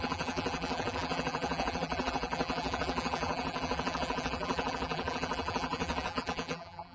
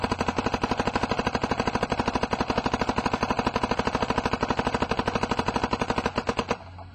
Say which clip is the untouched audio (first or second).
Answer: second